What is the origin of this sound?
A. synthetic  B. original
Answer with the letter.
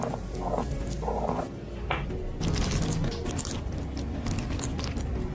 B